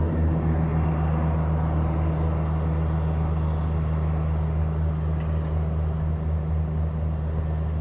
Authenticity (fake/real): real